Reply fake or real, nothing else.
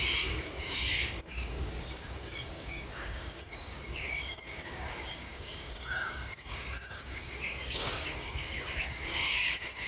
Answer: fake